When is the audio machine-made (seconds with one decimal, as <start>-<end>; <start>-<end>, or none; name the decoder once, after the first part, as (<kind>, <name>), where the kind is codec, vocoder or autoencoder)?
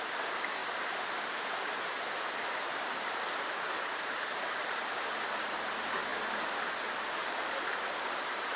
0.6-5.1 (vocoder, BigVGAN v2); 7.2-7.8